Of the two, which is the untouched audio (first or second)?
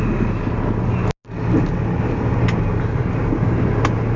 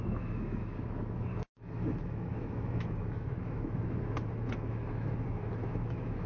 first